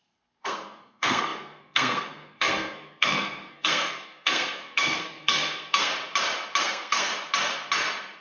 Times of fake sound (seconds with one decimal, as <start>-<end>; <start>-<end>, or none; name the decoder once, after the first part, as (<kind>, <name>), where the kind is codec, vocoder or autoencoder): 0.0-5.9 (codec, SNAC); 6.6-7.1

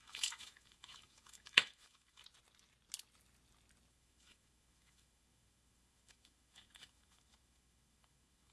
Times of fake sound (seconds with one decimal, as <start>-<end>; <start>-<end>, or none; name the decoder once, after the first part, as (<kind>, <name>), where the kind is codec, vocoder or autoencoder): 0.0-2.2 (autoencoder, DAC-VAE); 3.9-8.5

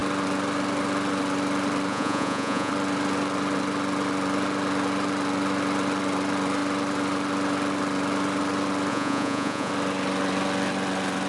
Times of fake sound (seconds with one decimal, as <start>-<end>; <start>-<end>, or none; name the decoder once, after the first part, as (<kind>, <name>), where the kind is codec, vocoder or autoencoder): 1.9-2.7 (vocoder, Vocos); 8.9-9.7

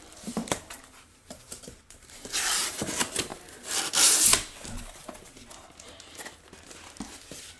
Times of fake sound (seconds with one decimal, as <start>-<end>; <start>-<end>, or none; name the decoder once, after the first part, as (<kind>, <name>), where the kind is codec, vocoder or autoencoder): 0.0-3.3 (vocoder, BigVGAN v2)

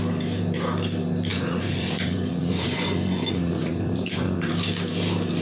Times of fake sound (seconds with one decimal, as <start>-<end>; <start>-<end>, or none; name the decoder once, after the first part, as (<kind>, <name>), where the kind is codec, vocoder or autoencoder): 1.3-4.5 (vocoder, Vocos)

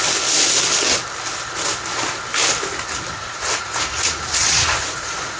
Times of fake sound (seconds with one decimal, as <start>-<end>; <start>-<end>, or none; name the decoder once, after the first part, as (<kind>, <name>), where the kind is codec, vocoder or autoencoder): 3.2-5.4 (vocoder, Vocos)